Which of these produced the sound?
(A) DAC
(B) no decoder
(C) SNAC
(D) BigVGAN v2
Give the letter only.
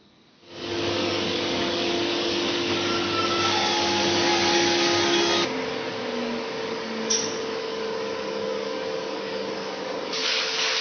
A